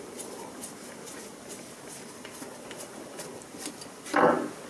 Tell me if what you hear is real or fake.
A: real